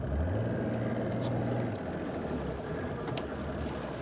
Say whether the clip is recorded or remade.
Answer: recorded